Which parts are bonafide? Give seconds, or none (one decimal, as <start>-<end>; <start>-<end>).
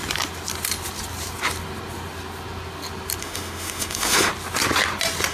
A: 0.0-3.2; 4.3-5.3